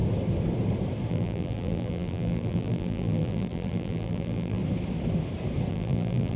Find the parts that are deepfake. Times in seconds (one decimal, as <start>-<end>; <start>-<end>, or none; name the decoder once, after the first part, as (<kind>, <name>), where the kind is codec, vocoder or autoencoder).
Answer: 1.1-4.6 (vocoder, BigVGAN v2); 5.7-6.4